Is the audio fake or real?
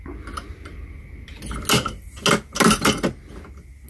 real